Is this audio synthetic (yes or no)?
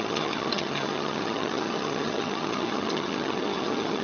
yes